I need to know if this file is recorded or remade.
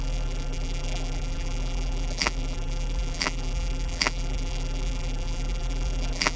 remade